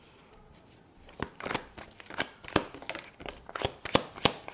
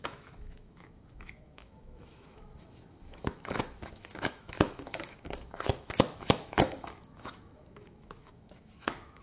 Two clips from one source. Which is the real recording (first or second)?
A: first